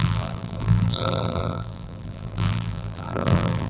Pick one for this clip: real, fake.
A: fake